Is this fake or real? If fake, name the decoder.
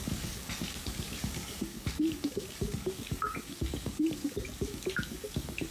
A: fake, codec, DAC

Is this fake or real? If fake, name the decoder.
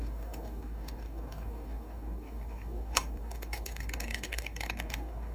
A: fake, codec, DAC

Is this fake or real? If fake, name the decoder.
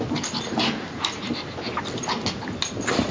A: real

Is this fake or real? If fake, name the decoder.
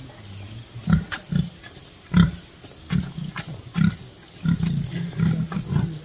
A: real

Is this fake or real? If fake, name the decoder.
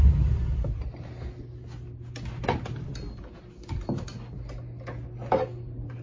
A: real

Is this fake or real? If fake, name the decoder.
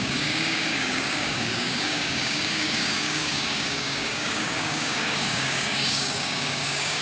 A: fake, codec, DAC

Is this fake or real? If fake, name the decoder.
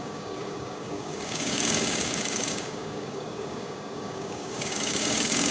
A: fake, codec, DAC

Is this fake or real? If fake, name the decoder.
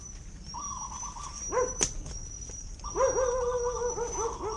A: real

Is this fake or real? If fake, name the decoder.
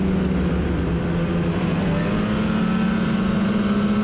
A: real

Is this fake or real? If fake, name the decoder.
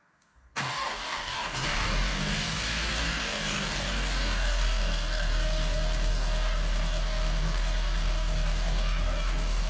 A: fake, codec, DAC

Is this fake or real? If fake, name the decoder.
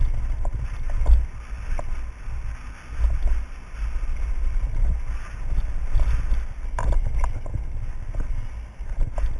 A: real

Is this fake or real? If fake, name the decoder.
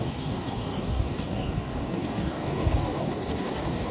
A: fake, codec, DAC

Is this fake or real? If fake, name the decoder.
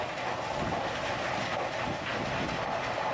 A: real